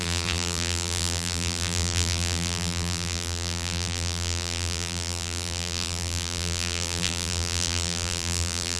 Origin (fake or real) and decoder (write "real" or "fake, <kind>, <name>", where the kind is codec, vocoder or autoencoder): fake, vocoder, BigVGAN v2